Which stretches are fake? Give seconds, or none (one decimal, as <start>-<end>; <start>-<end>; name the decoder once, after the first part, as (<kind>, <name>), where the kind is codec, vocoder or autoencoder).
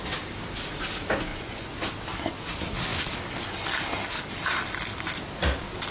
1.3-1.9 (vocoder, Vocos)